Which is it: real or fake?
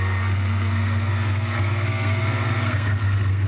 fake